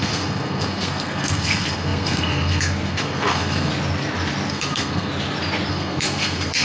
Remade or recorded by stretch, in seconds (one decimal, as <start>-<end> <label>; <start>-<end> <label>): 0.0-3.7 remade; 3.7-4.5 recorded; 4.5-5.1 remade; 5.1-5.7 recorded; 5.7-6.6 remade